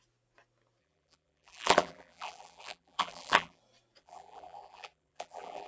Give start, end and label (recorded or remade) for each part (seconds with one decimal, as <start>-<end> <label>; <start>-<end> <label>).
0.0-0.8 recorded; 0.8-3.6 remade; 3.6-4.0 recorded; 4.0-5.7 remade